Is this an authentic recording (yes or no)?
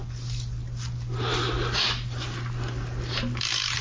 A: yes